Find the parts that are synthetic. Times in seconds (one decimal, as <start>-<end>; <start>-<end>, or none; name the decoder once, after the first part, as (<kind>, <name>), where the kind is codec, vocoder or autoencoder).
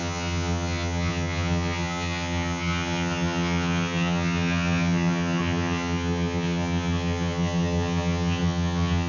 0.0-9.1 (vocoder, HiFi-GAN)